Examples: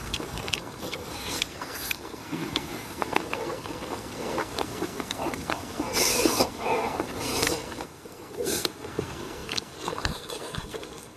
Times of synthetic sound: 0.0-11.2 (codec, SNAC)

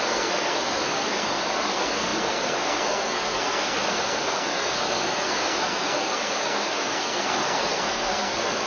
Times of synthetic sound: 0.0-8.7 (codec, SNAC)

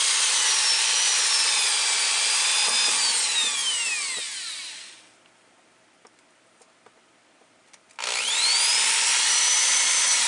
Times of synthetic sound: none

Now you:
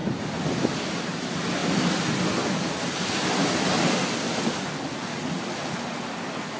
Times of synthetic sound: none

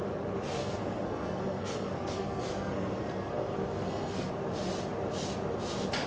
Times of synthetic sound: 0.6-4.3 (codec, SNAC)

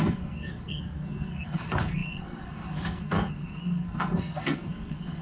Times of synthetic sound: 0.0-5.2 (codec, SNAC)

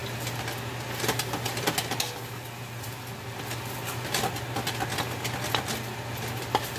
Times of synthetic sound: none